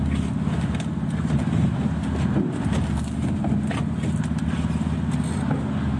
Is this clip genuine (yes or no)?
yes